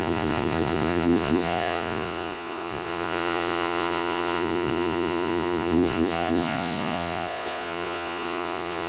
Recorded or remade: remade